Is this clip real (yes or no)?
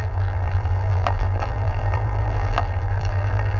no